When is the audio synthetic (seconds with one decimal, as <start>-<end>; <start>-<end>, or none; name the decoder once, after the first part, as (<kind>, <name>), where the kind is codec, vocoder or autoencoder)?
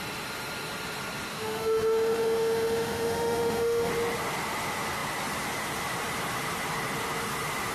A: 1.3-3.9 (autoencoder, DAC-VAE)